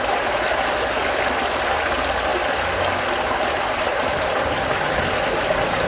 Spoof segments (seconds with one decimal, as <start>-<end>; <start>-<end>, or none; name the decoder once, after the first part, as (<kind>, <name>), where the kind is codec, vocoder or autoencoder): none